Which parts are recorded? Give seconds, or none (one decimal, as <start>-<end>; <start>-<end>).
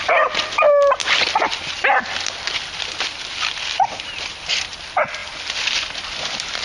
0.0-6.6